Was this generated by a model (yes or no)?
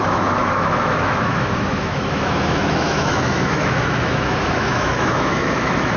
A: yes